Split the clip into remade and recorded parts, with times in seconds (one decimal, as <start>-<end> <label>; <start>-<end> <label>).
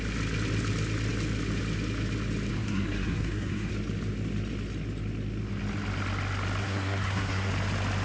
0.0-2.5 recorded; 2.5-3.7 remade; 3.7-6.6 recorded; 6.6-7.5 remade; 7.5-8.0 recorded